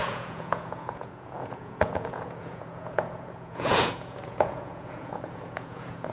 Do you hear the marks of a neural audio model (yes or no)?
yes